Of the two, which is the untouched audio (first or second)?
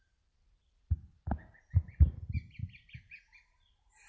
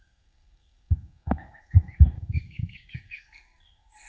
first